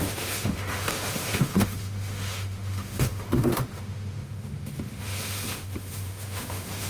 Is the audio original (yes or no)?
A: no